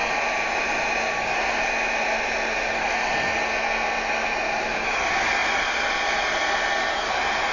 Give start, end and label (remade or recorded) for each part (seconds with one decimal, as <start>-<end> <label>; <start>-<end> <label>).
0.0-1.1 remade; 1.1-7.5 recorded